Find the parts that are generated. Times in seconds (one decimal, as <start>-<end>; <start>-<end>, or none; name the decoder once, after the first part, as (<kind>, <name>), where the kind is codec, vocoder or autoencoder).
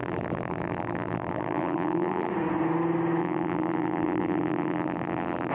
0.0-2.3 (vocoder, BigVGAN v2); 3.2-5.5